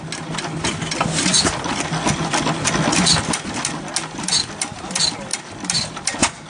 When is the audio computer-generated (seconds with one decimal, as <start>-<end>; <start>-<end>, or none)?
none